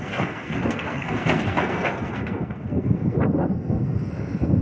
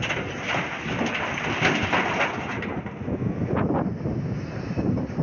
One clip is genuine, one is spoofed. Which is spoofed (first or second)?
first